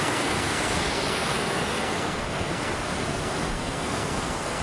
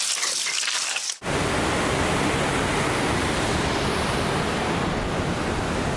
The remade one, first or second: first